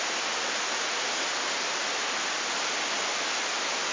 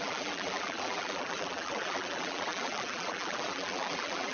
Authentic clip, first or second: first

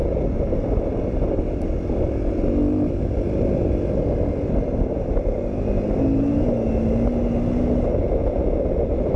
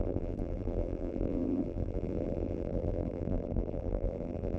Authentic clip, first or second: first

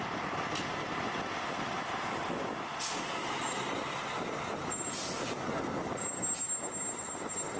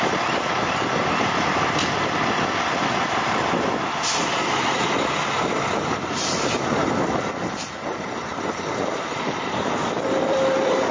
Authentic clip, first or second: first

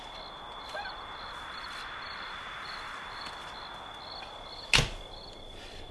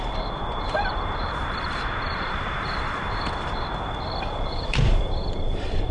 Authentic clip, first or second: first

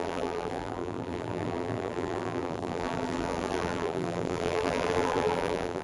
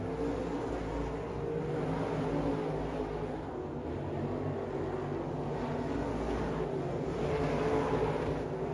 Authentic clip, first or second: second